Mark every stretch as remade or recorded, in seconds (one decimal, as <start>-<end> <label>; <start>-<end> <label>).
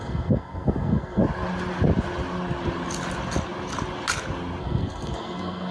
0.0-1.2 remade; 1.2-4.6 recorded; 4.6-5.7 remade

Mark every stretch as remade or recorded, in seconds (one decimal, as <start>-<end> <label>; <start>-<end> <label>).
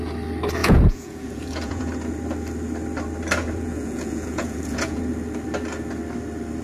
0.0-0.6 recorded; 0.6-1.9 remade; 1.9-3.4 recorded; 3.4-5.0 remade; 5.0-6.6 recorded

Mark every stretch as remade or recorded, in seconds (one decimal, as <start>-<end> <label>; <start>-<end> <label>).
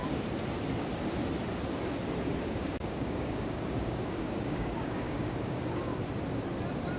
0.0-2.4 recorded; 2.4-5.9 remade; 5.9-7.0 recorded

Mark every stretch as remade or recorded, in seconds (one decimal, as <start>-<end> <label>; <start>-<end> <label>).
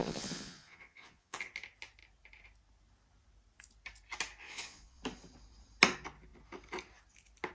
0.0-1.4 remade; 1.4-4.4 recorded; 4.4-5.0 remade; 5.0-7.5 recorded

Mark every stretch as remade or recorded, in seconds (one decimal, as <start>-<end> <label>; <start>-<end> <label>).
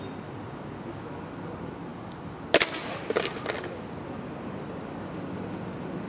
0.0-6.1 recorded